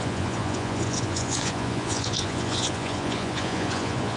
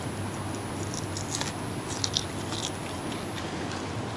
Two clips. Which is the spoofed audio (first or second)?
first